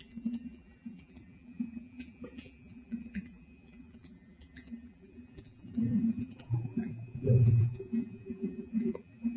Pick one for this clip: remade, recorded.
remade